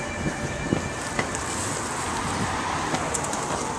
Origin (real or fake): real